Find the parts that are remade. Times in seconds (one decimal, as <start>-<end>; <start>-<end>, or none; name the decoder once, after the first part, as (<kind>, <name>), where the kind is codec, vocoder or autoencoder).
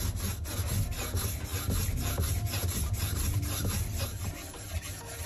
1.5-4.7 (vocoder, BigVGAN v2)